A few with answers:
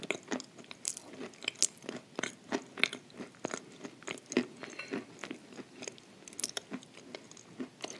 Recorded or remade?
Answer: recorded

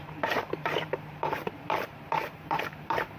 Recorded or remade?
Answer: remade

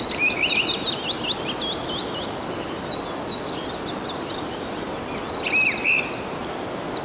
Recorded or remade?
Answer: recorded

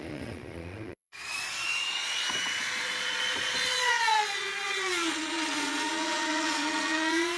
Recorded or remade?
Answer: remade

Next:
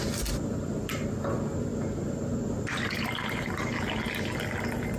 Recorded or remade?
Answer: recorded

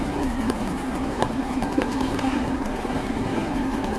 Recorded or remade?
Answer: remade